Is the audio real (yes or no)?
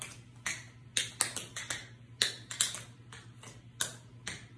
yes